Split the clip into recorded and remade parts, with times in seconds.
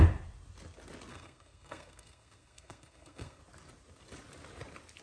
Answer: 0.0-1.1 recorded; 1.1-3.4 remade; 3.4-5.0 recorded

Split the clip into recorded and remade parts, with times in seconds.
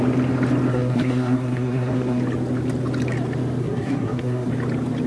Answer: 0.0-0.7 recorded; 0.7-2.2 remade; 2.2-3.6 recorded; 3.6-4.5 remade; 4.5-5.1 recorded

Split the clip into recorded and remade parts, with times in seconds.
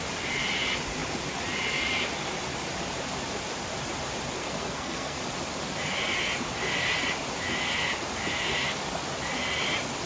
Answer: 0.0-4.4 recorded; 4.4-5.2 remade; 5.2-10.1 recorded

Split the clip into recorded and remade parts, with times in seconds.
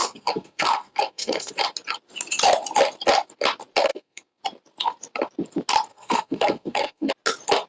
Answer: 0.0-1.5 remade; 1.5-3.9 recorded; 3.9-4.4 remade; 4.4-5.9 recorded; 5.9-7.1 remade; 7.1-7.7 recorded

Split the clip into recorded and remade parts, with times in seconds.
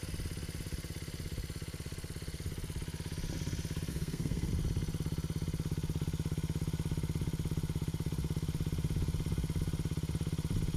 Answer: 0.0-3.9 recorded; 3.9-4.5 remade; 4.5-10.8 recorded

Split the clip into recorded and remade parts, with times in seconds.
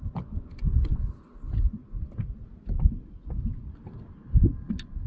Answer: 0.0-5.1 recorded